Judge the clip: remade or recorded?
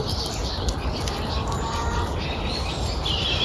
recorded